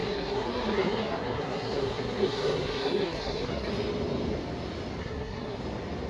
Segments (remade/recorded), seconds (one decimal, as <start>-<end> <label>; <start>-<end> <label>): 0.0-3.7 remade; 3.7-5.0 recorded; 5.0-5.6 remade; 5.6-6.1 recorded